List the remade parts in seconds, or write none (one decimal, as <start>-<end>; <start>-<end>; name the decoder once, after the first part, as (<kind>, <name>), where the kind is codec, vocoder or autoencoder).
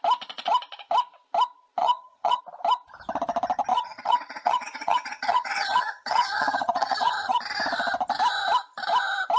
1.8-2.4 (vocoder, HiFi-GAN); 3.7-7.4